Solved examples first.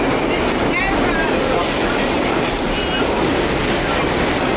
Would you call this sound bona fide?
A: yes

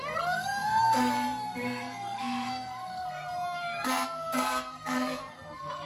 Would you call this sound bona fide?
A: no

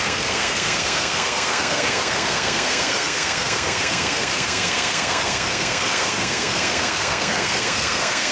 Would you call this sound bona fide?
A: no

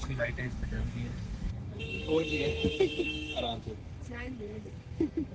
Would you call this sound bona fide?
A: no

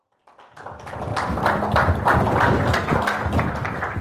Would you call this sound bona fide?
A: yes